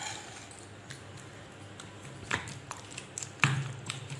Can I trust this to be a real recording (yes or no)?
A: yes